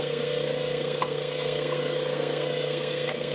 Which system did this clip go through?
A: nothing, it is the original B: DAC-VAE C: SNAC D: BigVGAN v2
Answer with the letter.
C